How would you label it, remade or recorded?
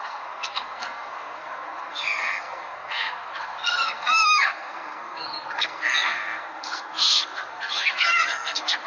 remade